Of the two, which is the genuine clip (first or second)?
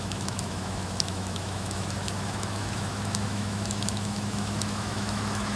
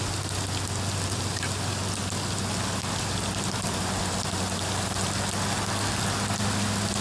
second